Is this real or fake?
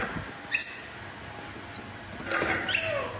real